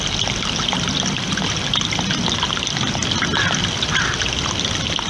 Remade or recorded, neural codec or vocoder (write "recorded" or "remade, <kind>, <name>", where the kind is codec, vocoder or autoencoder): recorded